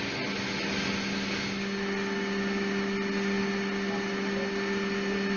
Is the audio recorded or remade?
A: recorded